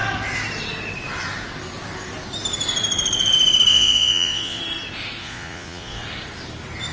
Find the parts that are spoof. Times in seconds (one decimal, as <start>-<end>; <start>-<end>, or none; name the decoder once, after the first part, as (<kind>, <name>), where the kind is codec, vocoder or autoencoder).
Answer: 3.7-4.6 (vocoder, Vocos); 5.2-6.0